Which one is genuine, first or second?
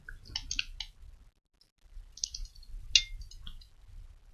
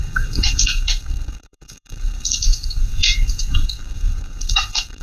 first